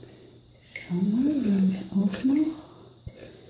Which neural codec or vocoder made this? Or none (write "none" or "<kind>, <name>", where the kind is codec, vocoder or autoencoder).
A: none